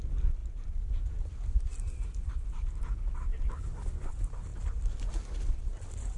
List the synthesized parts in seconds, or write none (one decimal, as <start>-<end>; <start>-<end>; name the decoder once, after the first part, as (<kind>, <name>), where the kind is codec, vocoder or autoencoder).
none